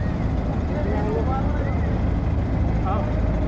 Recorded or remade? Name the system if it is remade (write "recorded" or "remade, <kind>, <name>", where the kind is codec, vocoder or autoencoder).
recorded